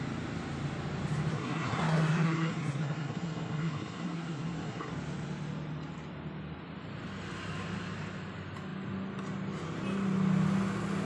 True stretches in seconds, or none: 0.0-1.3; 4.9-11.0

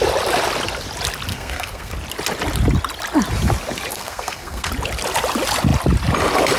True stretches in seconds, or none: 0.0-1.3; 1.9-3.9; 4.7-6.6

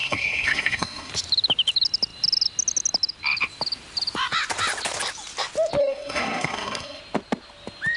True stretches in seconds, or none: 1.1-5.8; 7.0-8.0